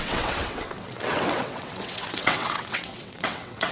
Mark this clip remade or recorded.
remade